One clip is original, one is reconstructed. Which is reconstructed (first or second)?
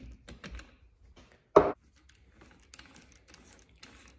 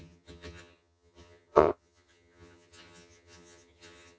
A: second